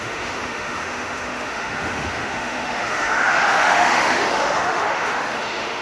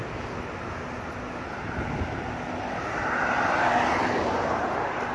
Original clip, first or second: second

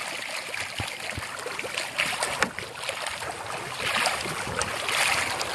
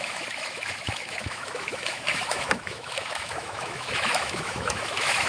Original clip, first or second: first